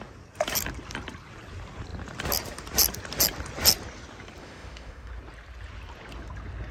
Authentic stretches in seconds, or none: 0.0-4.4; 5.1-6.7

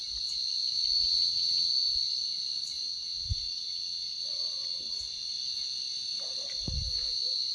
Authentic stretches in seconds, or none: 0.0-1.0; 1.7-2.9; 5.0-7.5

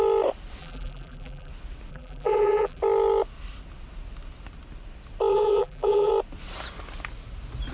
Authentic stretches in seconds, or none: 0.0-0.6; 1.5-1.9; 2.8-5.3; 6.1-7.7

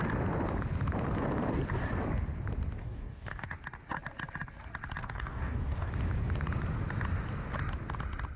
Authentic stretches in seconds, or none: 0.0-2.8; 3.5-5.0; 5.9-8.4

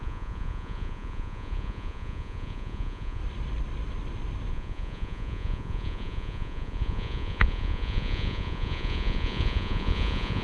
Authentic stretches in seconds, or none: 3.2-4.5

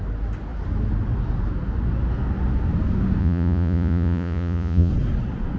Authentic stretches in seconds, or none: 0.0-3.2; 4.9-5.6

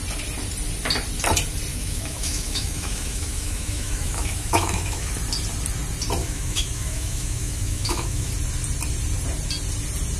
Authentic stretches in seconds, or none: 0.0-1.7; 5.1-6.2; 8.3-10.2

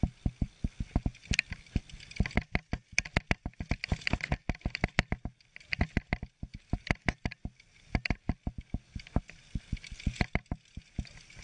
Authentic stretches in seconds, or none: 0.0-11.4